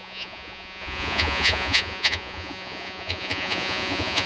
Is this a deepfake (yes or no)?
yes